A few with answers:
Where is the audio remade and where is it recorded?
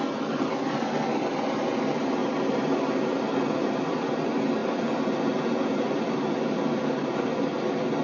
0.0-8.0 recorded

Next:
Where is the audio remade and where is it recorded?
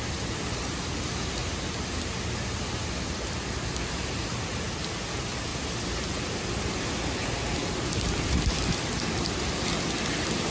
0.0-1.4 remade; 1.4-2.9 recorded; 2.9-5.5 remade; 5.5-8.3 recorded; 8.3-10.5 remade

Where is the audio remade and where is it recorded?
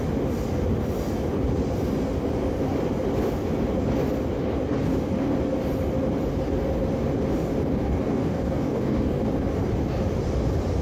0.0-7.8 recorded; 7.8-9.3 remade; 9.3-10.8 recorded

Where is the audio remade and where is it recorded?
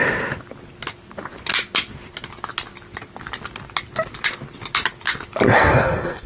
0.0-5.5 recorded; 5.5-6.3 remade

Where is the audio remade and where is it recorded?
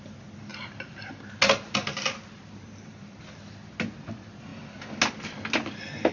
0.0-6.1 recorded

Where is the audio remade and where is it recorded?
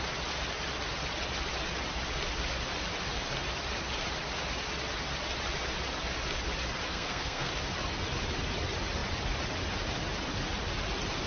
0.0-6.9 recorded; 6.9-7.5 remade; 7.5-11.3 recorded